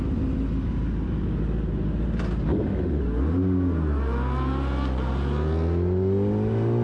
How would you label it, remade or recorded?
recorded